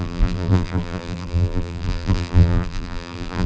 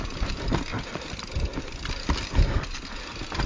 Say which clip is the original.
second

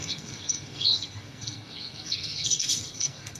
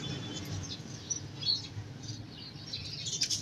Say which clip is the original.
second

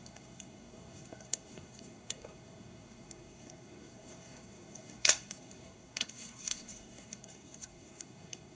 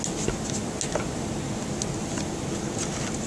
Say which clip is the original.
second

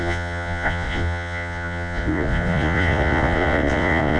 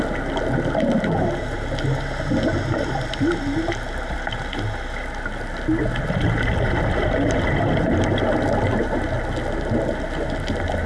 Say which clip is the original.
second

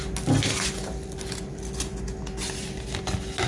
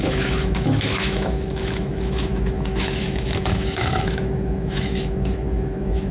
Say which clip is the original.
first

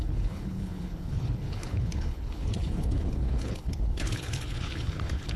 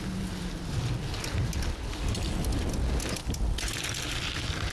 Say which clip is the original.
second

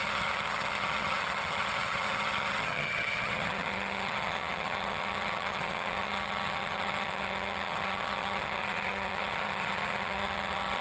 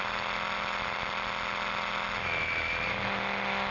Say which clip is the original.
second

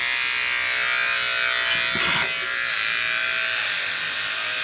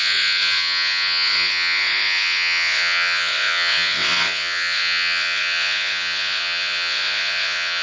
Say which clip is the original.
first